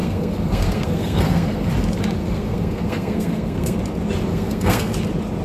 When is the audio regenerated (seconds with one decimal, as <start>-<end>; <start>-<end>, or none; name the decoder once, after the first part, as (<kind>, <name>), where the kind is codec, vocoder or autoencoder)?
0.0-1.7 (codec, SNAC); 2.2-3.8; 4.3-4.9